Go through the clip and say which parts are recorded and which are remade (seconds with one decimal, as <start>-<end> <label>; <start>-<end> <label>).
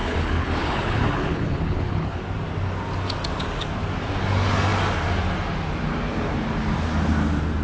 0.0-2.2 remade; 2.2-7.6 recorded